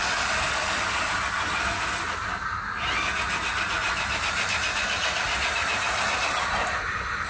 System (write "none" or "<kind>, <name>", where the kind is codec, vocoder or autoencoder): none